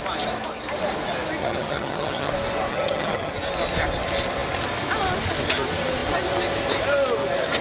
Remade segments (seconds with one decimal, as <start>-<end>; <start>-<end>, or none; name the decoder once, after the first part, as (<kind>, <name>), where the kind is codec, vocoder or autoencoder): 1.4-2.3 (vocoder, HiFi-GAN); 2.7-3.3